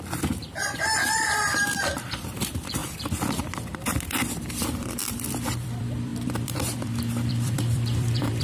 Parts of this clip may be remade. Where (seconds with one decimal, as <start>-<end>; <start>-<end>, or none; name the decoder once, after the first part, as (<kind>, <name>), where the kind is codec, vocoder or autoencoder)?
0.0-8.4 (vocoder, BigVGAN v2)

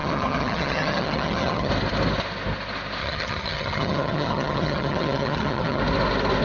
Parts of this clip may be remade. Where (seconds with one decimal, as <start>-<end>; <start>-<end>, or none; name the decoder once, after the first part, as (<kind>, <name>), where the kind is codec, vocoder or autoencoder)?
0.0-1.7 (vocoder, HiFi-GAN); 3.0-5.8

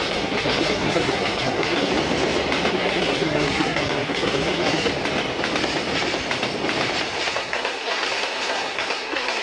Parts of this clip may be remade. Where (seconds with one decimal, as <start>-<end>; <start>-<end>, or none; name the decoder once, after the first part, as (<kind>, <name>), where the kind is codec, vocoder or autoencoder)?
0.0-1.9 (codec, SNAC); 2.7-4.9; 7.3-9.4

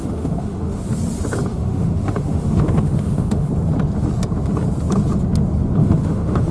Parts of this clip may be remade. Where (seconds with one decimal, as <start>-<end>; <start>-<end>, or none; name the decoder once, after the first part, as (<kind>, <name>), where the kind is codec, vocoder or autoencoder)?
0.0-0.8 (autoencoder, DAC-VAE); 1.5-3.5; 5.8-6.5

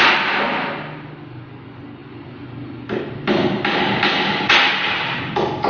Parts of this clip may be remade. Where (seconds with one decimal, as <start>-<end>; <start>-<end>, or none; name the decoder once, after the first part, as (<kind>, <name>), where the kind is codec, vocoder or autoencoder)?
none

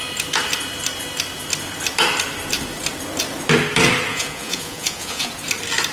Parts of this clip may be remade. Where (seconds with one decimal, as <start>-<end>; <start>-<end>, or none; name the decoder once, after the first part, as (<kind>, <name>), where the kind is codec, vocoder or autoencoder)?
4.1-5.3 (vocoder, Vocos)

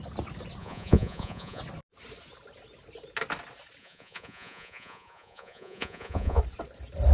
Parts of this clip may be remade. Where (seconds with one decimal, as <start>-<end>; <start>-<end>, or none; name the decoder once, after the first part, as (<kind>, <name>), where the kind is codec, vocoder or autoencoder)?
0.6-1.6 (vocoder, Vocos); 3.8-6.4

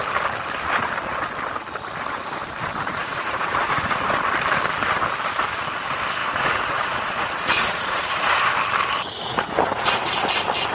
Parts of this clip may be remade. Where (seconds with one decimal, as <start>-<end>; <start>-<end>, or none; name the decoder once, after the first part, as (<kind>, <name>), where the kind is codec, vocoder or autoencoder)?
2.9-4.1 (vocoder, Vocos); 6.2-8.3; 9.2-10.1